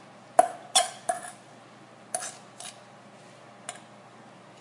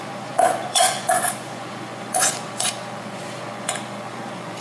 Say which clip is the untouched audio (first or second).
first